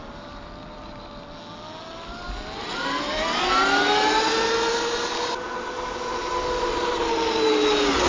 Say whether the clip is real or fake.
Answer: real